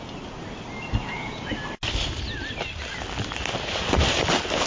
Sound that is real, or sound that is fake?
real